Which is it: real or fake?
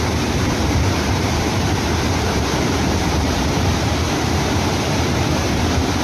fake